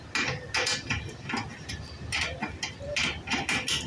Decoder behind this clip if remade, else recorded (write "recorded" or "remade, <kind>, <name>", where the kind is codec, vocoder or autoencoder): recorded